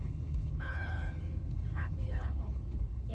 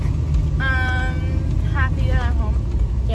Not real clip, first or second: first